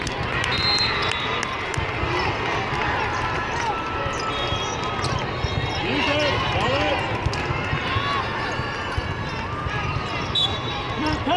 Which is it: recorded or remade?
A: recorded